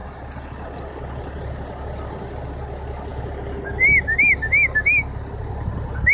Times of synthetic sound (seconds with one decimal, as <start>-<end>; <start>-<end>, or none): none